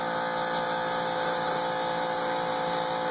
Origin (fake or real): real